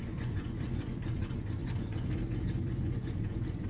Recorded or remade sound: remade